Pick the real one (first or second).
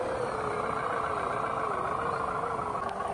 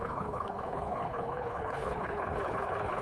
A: first